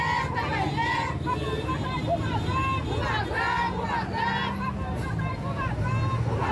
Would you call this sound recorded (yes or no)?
yes